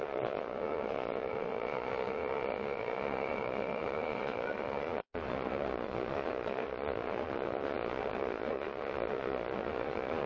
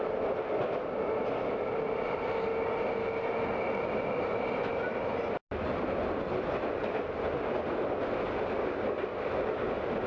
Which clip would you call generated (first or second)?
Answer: first